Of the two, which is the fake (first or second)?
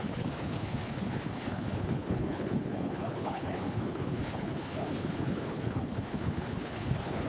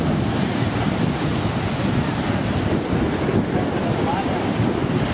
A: first